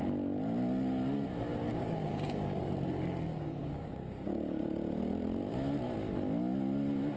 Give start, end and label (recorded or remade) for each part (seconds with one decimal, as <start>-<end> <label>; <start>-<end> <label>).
0.0-1.7 recorded; 1.7-2.7 remade; 2.7-3.3 recorded; 3.3-4.6 remade; 4.6-7.2 recorded